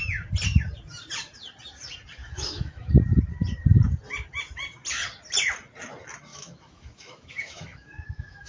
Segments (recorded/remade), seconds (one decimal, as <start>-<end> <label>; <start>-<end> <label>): 0.0-2.2 recorded; 2.2-2.9 remade; 2.9-6.3 recorded; 6.3-8.5 remade